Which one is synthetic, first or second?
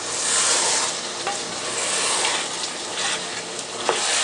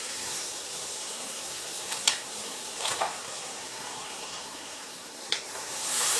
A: second